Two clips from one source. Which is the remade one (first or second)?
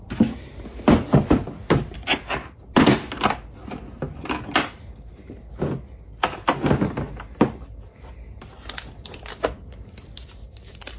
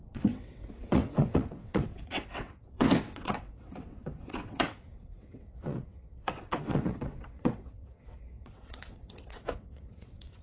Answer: second